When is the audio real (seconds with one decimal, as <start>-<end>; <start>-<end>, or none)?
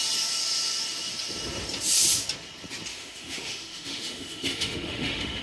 0.0-2.9